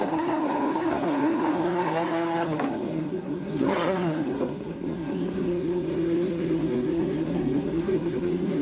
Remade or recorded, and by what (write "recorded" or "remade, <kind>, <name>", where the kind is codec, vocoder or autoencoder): remade, codec, SNAC